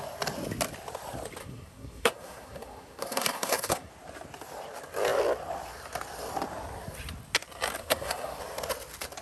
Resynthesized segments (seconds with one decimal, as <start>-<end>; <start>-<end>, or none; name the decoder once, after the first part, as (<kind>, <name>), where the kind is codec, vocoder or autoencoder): 1.4-3.9 (codec, SNAC); 7.8-8.4